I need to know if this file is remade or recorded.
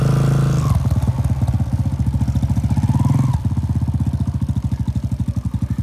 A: recorded